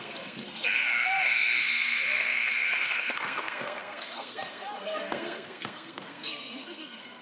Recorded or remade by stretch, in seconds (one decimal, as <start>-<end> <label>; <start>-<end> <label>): 0.0-7.2 remade